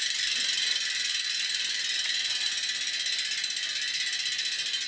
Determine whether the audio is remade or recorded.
recorded